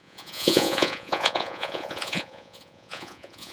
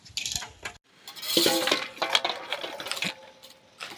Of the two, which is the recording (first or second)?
second